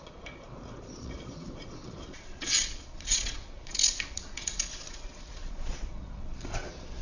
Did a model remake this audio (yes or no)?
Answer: yes